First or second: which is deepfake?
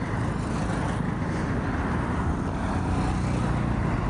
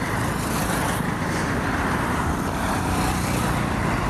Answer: second